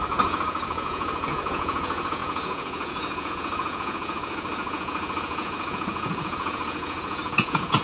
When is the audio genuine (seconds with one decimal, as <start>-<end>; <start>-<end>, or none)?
none